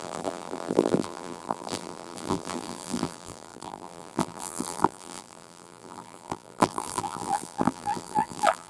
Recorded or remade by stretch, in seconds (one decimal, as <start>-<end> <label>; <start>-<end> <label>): 0.0-8.7 remade